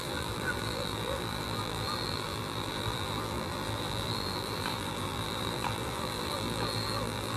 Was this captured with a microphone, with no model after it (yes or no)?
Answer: no